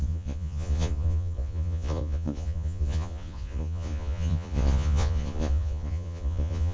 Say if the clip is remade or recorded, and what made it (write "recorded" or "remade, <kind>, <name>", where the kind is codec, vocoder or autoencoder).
remade, vocoder, Vocos